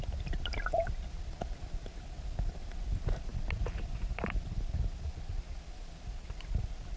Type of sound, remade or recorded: recorded